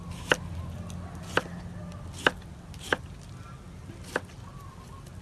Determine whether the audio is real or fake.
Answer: real